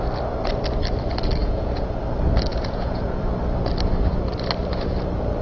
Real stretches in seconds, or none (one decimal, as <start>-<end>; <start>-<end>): 0.0-1.4; 2.0-2.5; 3.2-5.4